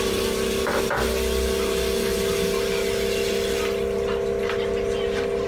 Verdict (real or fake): real